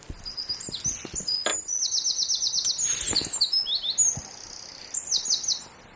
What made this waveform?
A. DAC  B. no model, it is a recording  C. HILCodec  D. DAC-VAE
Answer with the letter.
B